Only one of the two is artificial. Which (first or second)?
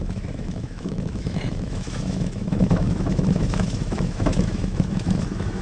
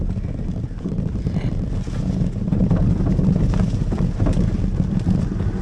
first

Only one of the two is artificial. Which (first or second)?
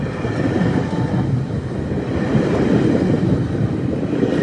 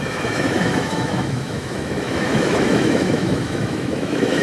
second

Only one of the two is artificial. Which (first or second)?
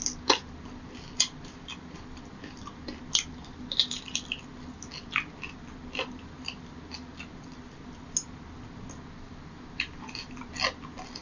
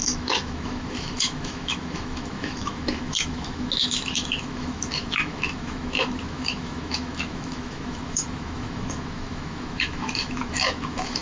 second